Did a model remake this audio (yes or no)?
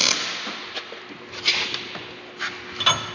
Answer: no